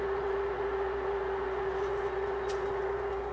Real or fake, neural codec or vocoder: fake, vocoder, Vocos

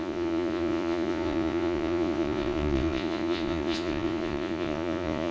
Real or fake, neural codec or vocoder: fake, vocoder, Vocos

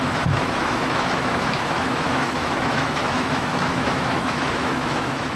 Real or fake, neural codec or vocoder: fake, autoencoder, DAC-VAE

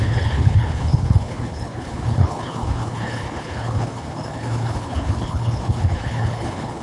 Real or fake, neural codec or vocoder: fake, codec, HILCodec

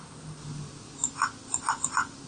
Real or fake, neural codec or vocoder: real